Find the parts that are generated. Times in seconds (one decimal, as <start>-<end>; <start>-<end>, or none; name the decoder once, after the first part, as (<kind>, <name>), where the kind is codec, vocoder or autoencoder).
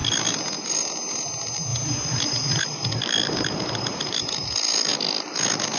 none